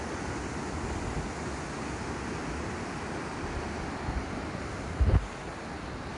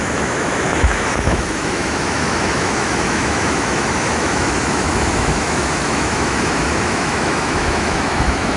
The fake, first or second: second